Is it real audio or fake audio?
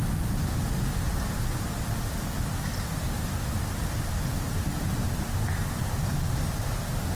real